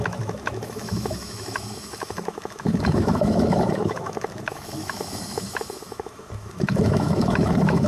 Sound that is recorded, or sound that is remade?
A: remade